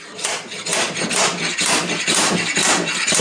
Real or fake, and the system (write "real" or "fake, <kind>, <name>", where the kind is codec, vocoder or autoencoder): real